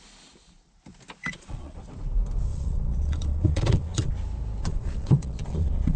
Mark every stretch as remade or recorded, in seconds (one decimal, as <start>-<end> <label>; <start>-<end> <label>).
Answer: 0.0-1.2 recorded; 1.2-1.8 remade; 1.8-2.5 recorded; 2.5-4.1 remade; 4.1-4.6 recorded; 4.6-6.0 remade